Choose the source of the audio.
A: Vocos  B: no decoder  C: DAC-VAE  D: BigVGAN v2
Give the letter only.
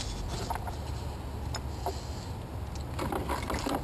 B